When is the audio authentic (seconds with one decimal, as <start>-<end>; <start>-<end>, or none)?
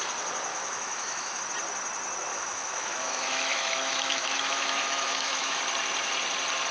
0.0-0.5; 1.4-2.3; 5.6-6.7